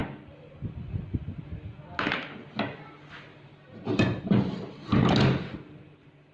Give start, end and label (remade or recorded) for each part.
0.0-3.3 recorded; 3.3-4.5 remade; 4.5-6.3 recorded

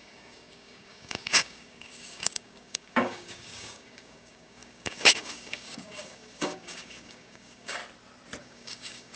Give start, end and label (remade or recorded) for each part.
0.0-7.8 remade; 7.8-8.4 recorded; 8.4-9.2 remade

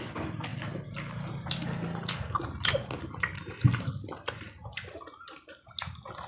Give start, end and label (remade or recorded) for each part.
0.0-6.3 recorded